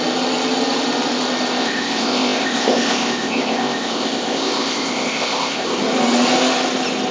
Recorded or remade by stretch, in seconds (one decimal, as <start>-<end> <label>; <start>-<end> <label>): 0.0-1.6 recorded; 1.6-5.8 remade; 5.8-7.1 recorded